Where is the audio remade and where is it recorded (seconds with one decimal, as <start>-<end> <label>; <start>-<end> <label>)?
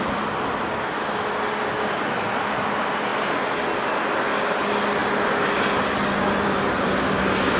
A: 0.0-7.6 recorded